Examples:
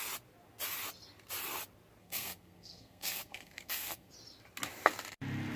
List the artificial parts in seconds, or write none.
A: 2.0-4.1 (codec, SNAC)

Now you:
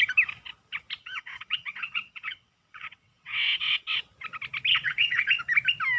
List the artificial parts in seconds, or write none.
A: 1.0-4.0 (vocoder, WaveNeXt); 4.7-5.4

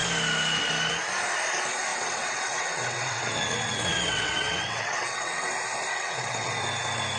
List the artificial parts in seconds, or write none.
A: 1.9-5.5 (vocoder, WaveNeXt); 5.9-6.5

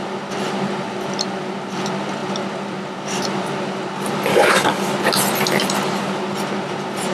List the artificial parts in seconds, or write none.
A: 4.3-4.9 (codec, DAC)